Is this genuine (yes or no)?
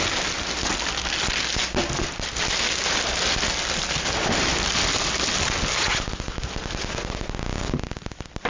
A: yes